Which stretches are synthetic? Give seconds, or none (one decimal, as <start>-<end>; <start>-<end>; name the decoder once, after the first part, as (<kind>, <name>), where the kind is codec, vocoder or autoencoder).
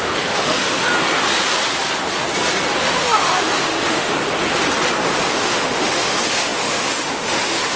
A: 0.0-0.9 (autoencoder, DAC-VAE); 2.8-4.1; 5.4-7.8